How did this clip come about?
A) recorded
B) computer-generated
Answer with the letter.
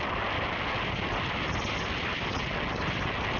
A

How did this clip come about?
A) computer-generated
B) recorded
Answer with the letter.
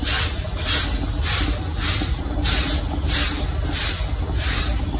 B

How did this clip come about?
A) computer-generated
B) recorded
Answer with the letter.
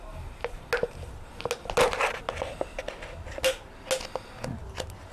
B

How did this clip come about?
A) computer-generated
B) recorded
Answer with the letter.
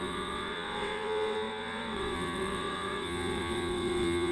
A